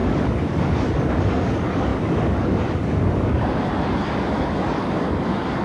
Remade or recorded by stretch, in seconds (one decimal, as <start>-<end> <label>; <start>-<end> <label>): 0.0-5.6 remade